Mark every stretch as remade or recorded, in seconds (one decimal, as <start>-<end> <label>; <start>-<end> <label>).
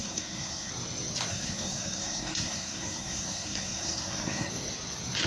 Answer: 0.0-0.7 remade; 0.7-1.3 recorded; 1.3-4.5 remade; 4.5-5.3 recorded